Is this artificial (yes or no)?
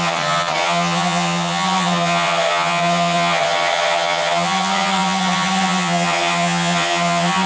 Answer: yes